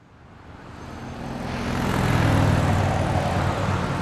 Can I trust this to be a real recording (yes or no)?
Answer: yes